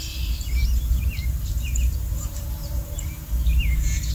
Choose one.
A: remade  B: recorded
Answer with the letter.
A